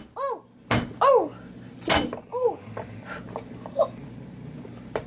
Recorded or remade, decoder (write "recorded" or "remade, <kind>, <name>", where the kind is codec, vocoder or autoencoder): recorded